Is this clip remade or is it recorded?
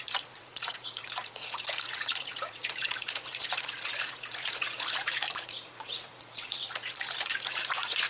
remade